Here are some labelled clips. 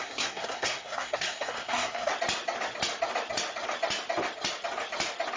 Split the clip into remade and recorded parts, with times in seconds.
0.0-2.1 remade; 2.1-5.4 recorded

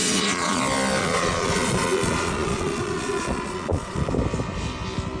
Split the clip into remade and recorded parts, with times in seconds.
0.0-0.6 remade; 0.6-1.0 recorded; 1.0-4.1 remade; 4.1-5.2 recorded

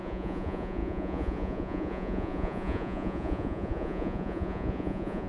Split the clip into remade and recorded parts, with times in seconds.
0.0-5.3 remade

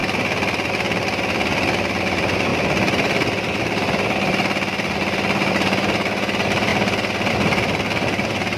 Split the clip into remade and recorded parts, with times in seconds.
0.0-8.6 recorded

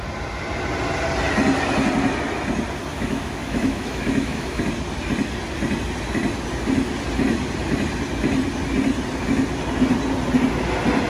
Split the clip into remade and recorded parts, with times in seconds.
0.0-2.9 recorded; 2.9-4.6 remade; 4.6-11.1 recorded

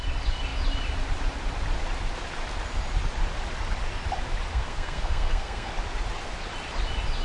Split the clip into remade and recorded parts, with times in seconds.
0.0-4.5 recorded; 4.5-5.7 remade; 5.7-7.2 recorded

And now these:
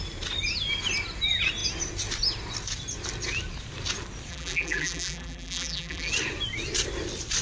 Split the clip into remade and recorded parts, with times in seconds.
0.0-4.3 recorded; 4.3-6.1 remade; 6.1-7.4 recorded

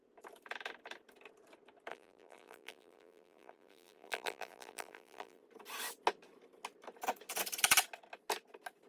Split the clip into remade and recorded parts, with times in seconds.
0.0-1.9 recorded; 1.9-5.4 remade; 5.4-8.9 recorded